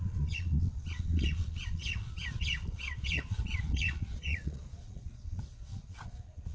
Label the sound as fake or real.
fake